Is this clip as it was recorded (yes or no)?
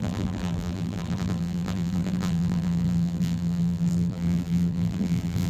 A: no